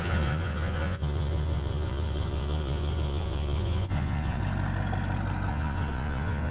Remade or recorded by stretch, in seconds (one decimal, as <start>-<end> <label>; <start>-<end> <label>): 0.0-4.4 remade; 4.4-5.5 recorded; 5.5-6.5 remade